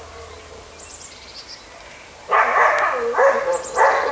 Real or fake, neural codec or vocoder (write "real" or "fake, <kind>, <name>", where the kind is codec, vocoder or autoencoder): real